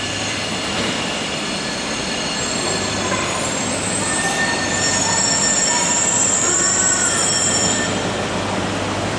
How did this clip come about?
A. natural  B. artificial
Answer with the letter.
B